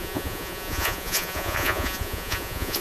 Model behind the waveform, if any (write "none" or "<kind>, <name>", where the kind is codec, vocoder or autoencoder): vocoder, Vocos